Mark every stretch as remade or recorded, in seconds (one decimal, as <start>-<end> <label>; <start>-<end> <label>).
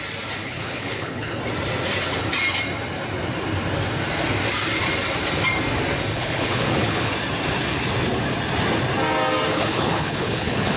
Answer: 0.0-0.4 recorded; 0.4-1.4 remade; 1.4-6.1 recorded; 6.1-7.1 remade; 7.1-9.5 recorded; 9.5-10.8 remade